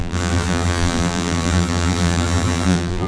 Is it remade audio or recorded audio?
remade